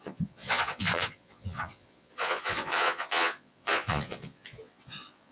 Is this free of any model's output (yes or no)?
no